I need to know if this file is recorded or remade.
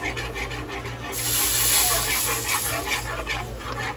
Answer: recorded